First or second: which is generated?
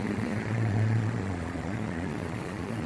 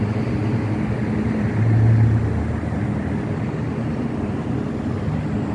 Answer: first